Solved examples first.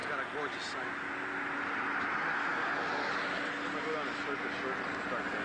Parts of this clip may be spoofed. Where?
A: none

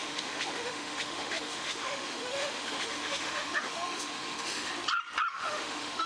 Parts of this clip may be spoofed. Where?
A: 0.0-4.7 (autoencoder, DAC-VAE); 5.3-6.1